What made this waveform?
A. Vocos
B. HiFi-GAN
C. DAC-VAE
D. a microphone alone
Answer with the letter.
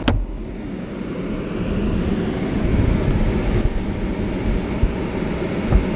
D